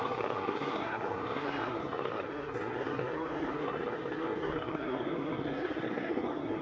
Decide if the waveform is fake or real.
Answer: fake